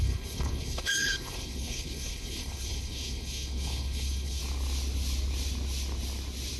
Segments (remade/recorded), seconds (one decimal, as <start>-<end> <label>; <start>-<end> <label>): 0.0-4.4 remade; 4.4-6.6 recorded